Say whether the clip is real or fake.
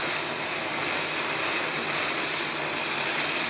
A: real